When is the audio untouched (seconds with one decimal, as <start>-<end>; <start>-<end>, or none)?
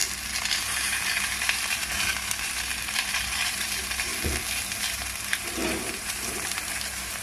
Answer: 0.0-0.5; 4.1-4.8